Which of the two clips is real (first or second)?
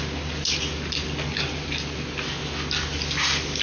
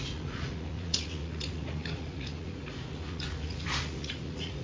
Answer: first